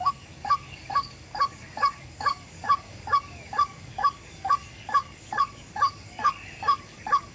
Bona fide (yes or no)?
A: no